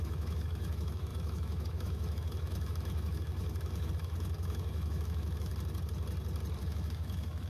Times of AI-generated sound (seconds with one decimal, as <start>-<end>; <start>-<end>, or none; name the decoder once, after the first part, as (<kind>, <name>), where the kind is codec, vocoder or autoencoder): 0.0-5.5 (autoencoder, DAC-VAE); 6.6-7.5